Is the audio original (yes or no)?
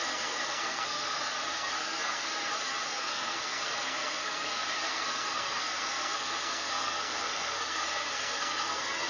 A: no